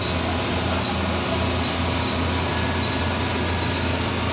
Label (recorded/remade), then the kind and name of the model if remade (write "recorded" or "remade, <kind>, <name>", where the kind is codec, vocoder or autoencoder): recorded